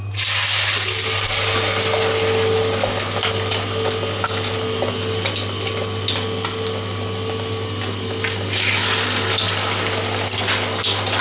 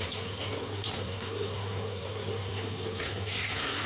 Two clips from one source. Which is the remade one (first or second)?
second